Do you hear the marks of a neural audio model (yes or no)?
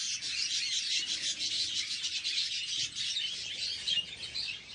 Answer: no